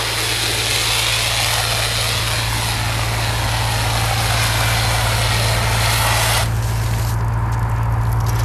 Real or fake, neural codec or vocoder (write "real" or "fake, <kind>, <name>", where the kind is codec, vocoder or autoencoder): real